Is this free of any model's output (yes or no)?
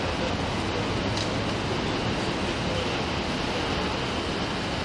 yes